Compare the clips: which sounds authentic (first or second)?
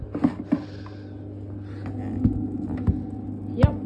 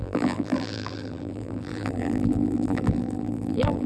first